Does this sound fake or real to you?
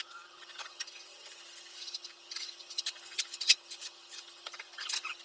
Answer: fake